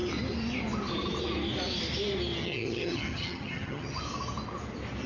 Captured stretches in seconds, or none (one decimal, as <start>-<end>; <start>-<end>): 0.0-2.4; 4.0-5.1